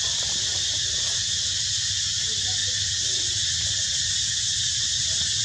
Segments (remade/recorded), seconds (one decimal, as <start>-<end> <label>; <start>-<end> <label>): 0.0-5.4 recorded